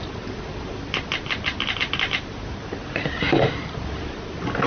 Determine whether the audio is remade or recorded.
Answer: recorded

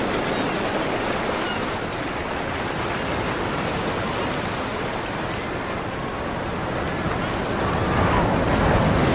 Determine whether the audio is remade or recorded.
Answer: recorded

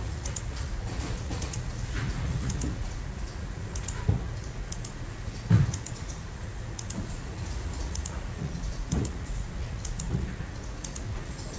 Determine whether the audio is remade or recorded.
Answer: remade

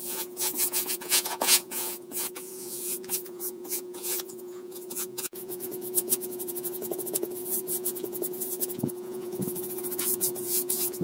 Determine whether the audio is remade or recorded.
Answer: remade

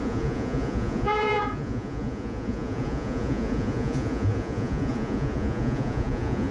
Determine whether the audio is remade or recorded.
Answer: remade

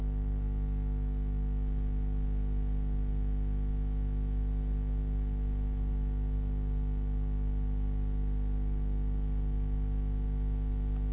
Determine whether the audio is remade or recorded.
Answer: recorded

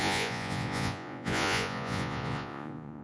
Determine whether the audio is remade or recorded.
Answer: remade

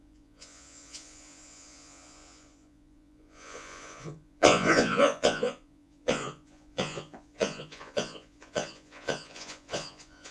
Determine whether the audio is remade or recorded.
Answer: remade